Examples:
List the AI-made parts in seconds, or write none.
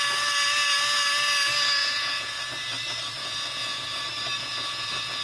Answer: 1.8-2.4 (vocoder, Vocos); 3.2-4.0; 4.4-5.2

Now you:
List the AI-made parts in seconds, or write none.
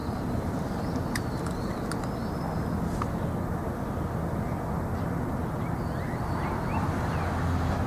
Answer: 0.0-1.7 (vocoder, BigVGAN v2); 2.2-2.7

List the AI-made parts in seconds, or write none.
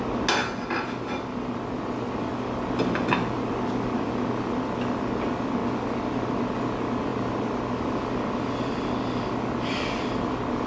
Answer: none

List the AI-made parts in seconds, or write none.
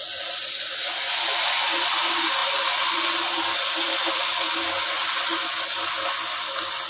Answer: none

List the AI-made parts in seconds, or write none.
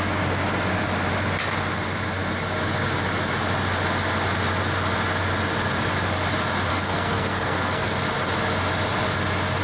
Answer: 6.7-8.0 (codec, SNAC)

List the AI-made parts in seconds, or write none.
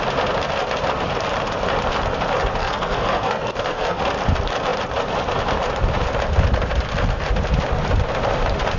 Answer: 2.6-4.0 (codec, SNAC)